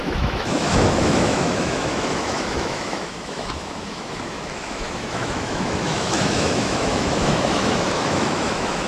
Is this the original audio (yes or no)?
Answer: no